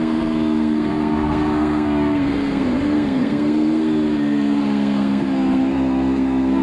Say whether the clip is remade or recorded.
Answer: remade